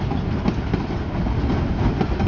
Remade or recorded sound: recorded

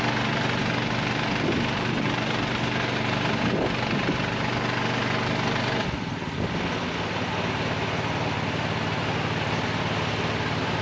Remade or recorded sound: recorded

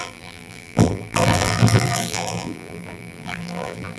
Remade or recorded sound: remade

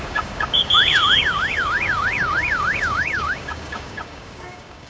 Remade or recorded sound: remade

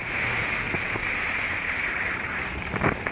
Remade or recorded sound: remade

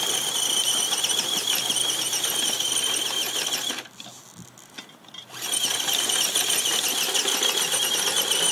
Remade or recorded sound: recorded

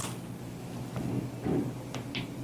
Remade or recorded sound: recorded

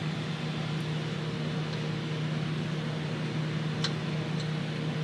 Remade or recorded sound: recorded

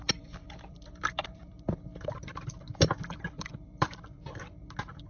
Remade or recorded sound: remade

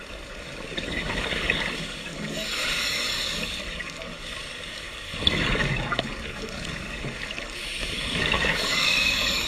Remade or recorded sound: remade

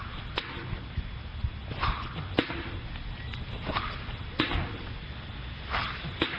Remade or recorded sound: recorded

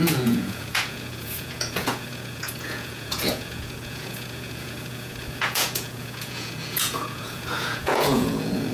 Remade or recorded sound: remade